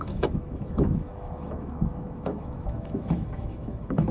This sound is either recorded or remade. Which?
remade